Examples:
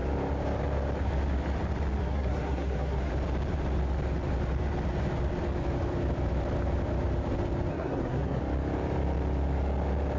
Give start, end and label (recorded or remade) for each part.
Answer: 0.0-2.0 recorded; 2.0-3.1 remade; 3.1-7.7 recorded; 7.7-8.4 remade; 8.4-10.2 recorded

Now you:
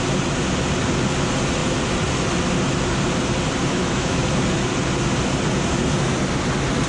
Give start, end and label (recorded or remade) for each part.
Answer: 0.0-3.7 recorded; 3.7-4.2 remade; 4.2-6.9 recorded